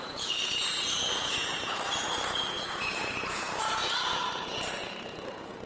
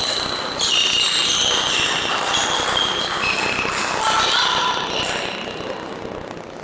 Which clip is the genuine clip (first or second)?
second